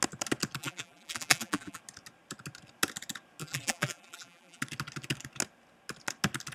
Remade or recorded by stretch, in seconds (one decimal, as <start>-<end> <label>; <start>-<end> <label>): 0.0-0.6 recorded; 0.6-1.8 remade; 1.8-3.4 recorded; 3.4-4.6 remade; 4.6-6.5 recorded